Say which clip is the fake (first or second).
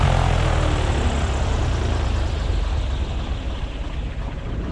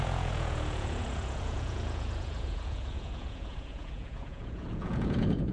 second